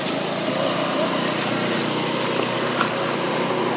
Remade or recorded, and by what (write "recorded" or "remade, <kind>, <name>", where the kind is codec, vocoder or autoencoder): recorded